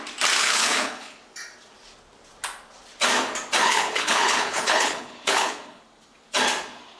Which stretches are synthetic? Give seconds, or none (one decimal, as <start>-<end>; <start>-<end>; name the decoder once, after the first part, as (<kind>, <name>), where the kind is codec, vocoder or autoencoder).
0.4-1.2 (codec, HILCodec); 3.6-5.8